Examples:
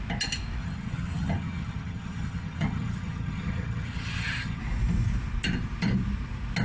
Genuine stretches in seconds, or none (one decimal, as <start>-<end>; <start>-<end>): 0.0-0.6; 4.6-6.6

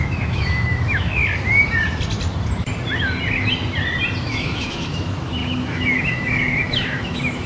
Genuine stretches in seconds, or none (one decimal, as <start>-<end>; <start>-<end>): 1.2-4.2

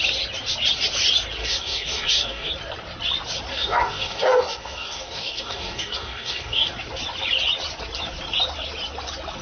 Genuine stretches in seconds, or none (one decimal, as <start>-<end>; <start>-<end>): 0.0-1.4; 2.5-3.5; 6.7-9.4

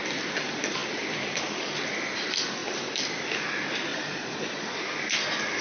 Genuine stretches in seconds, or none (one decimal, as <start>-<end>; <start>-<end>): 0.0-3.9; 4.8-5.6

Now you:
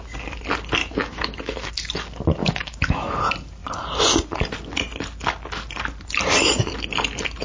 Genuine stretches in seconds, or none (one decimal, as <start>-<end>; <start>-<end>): 0.0-0.8; 1.7-2.4; 3.1-7.4

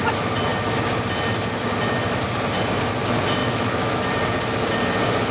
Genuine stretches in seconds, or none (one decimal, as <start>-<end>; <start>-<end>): 0.0-3.4; 4.1-5.3

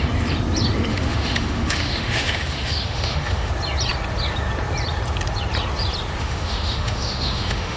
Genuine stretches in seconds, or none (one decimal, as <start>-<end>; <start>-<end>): 0.0-0.9; 3.5-6.2

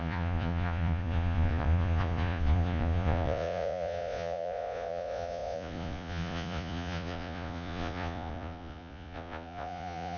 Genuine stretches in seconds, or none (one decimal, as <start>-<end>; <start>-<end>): none